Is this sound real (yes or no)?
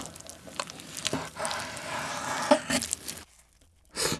yes